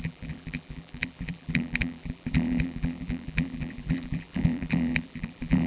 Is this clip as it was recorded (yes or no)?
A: no